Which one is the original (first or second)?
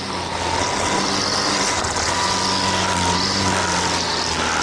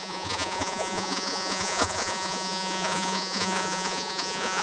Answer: first